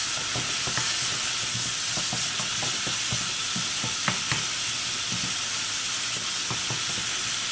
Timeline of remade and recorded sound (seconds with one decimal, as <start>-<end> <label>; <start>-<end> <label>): 0.0-7.5 recorded